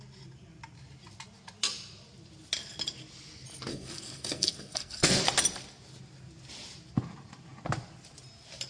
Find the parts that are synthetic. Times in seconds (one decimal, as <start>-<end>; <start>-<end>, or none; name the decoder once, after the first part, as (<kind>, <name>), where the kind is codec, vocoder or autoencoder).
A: 3.7-5.2 (codec, SNAC)